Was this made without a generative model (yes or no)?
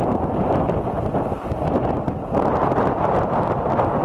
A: yes